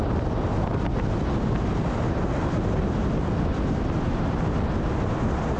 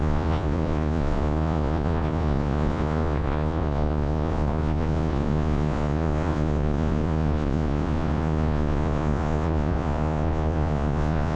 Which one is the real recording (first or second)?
first